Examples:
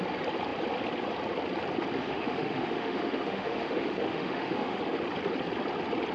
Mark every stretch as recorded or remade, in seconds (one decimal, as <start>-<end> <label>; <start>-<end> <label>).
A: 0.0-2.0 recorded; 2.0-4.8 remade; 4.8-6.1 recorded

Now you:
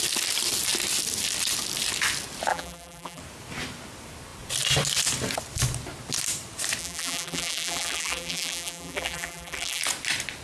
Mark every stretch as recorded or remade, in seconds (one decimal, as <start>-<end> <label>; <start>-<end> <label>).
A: 0.0-2.5 recorded; 2.5-3.2 remade; 3.2-6.8 recorded; 6.8-9.8 remade; 9.8-10.4 recorded

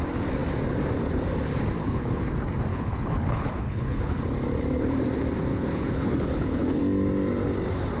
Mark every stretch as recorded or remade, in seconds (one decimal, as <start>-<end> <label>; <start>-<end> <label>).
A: 0.0-1.8 recorded; 1.8-2.3 remade; 2.3-2.7 recorded; 2.7-4.2 remade; 4.2-5.5 recorded; 5.5-6.8 remade; 6.8-8.0 recorded

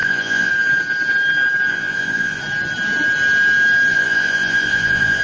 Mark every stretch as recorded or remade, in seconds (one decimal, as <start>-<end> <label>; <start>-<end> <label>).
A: 0.0-0.5 remade; 0.5-1.7 recorded; 1.7-2.4 remade; 2.4-3.9 recorded; 3.9-5.2 remade

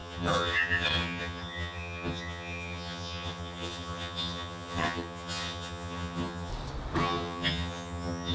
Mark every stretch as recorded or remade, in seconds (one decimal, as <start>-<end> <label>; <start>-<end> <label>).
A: 0.0-6.5 remade; 6.5-7.0 recorded; 7.0-8.3 remade

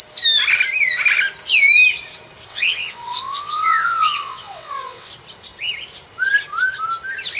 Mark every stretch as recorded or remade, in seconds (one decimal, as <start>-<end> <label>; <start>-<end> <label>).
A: 0.0-2.5 recorded; 2.5-5.1 remade; 5.1-7.4 recorded